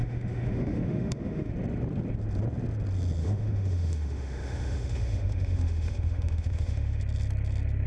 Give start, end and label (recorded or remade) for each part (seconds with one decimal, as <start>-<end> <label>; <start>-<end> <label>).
0.0-1.5 remade; 1.5-3.2 recorded; 3.2-7.0 remade; 7.0-7.9 recorded